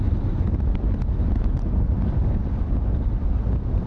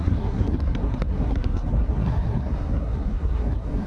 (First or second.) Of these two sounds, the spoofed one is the second